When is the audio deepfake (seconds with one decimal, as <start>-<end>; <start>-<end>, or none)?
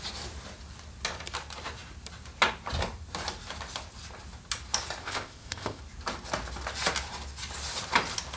5.0-5.8